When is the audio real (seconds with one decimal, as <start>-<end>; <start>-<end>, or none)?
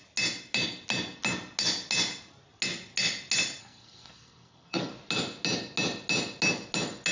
0.0-3.6; 4.9-7.1